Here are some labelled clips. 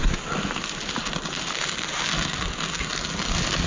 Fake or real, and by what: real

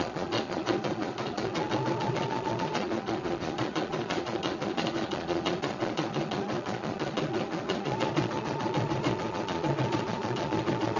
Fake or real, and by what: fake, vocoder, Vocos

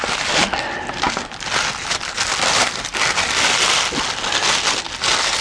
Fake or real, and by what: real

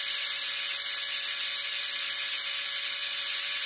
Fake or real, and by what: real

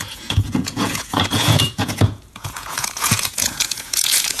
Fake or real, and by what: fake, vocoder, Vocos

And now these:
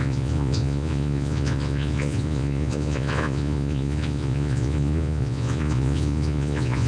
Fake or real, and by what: fake, vocoder, Vocos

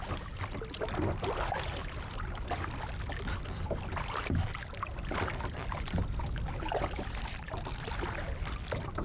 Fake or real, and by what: real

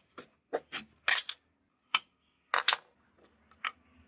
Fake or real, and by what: real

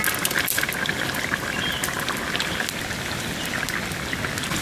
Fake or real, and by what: real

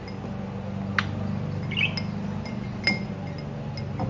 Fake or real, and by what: real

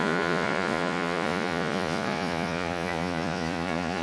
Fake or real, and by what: fake, vocoder, Vocos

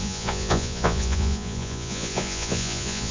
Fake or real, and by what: fake, vocoder, Vocos